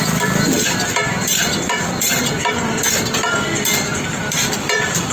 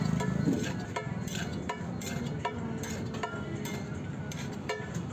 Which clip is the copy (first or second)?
first